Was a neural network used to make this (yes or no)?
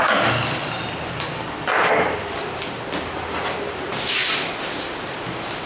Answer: no